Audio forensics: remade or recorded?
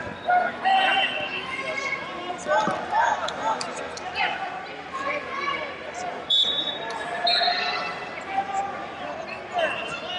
remade